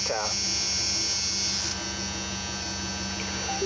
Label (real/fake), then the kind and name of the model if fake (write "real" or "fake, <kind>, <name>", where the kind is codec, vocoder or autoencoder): real